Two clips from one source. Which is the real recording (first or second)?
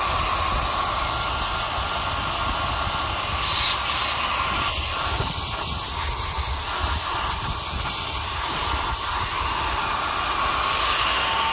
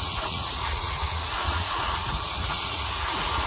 first